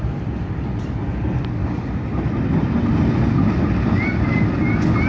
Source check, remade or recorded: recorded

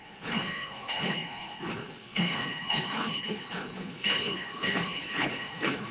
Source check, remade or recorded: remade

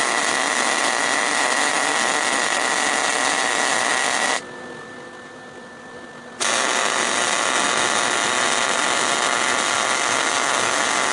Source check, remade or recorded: recorded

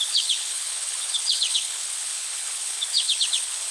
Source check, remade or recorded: remade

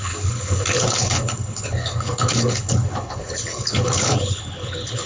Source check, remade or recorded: remade